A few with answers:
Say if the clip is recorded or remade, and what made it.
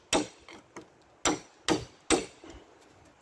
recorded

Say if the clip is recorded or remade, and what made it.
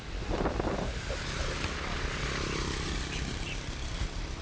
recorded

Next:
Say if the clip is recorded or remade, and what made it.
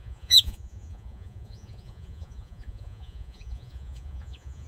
remade, vocoder, Vocos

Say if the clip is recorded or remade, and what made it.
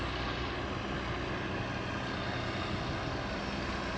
recorded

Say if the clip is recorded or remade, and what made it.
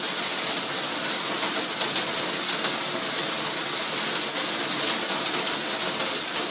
recorded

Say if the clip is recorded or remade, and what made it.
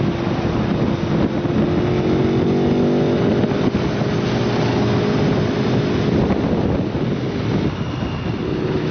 recorded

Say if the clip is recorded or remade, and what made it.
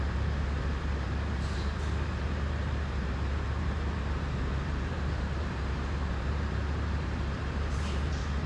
remade, vocoder, BigVGAN v2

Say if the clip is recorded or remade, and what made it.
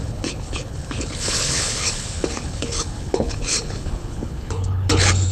remade, codec, HILCodec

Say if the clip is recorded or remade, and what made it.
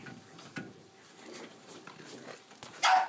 recorded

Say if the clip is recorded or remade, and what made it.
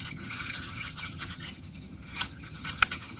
remade, vocoder, HiFi-GAN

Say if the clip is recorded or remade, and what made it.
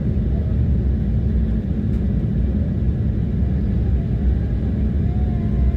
recorded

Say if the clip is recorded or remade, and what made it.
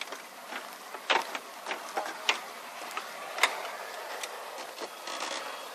recorded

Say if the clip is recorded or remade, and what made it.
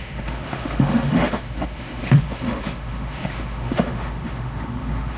remade, autoencoder, DAC-VAE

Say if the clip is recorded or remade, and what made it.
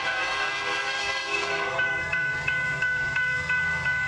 remade, codec, SNAC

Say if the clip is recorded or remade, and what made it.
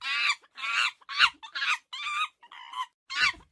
recorded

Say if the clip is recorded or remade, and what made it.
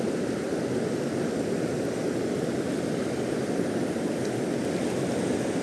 recorded